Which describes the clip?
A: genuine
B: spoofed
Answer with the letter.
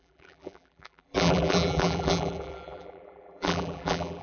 B